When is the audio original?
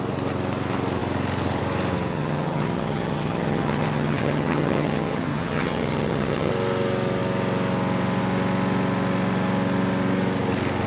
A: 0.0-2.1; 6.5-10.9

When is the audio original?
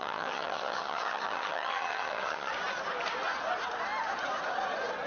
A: 2.5-5.1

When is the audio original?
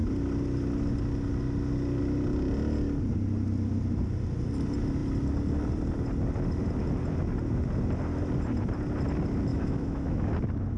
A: 0.0-9.5; 10.3-10.8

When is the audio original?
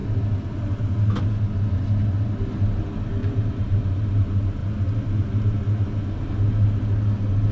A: 0.0-3.2; 3.9-7.5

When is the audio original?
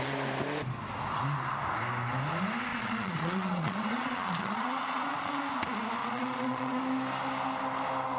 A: 0.0-2.7; 5.4-6.0; 6.8-8.2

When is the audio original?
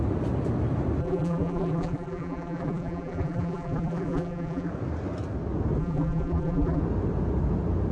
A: 0.0-1.0; 4.7-5.8; 6.8-7.9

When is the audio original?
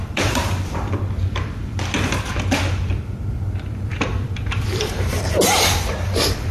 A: 1.6-3.3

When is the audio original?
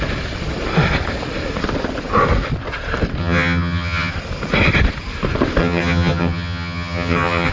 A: 0.0-3.2; 4.1-5.6